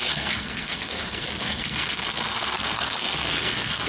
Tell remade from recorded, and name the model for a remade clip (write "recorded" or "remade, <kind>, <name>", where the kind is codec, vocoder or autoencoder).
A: remade, codec, SNAC